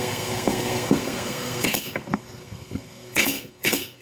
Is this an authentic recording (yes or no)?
no